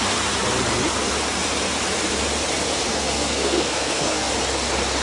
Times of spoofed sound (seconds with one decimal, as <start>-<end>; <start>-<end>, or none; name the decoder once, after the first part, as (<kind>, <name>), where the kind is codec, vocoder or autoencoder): 2.9-4.3 (codec, SNAC)